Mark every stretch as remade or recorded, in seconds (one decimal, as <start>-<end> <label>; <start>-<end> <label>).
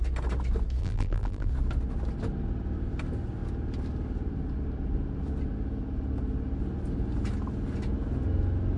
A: 0.0-0.8 recorded; 0.8-1.5 remade; 1.5-8.8 recorded